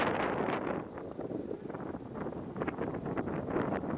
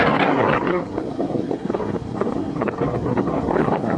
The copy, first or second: second